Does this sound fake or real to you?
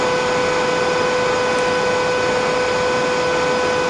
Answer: real